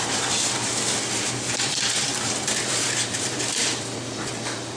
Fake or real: fake